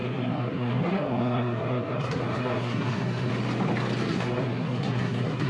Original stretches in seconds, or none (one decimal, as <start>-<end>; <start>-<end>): 3.3-4.1